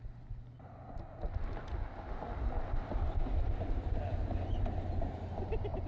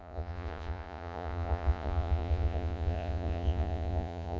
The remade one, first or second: second